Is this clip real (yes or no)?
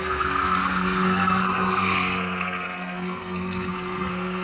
no